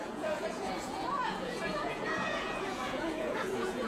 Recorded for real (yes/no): no